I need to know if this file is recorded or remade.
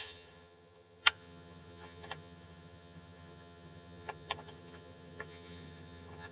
remade